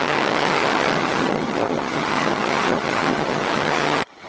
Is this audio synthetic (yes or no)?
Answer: yes